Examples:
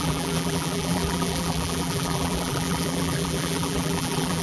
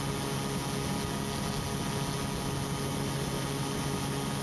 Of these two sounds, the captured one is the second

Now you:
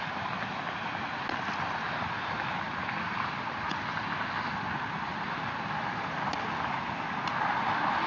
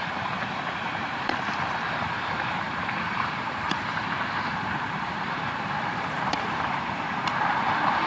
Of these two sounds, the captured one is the first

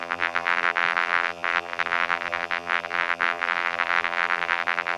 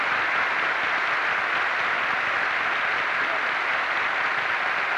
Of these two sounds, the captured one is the second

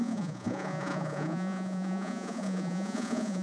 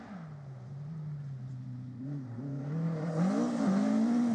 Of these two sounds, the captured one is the second